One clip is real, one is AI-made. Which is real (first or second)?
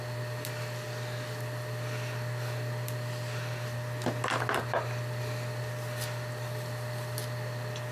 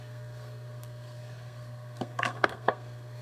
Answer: first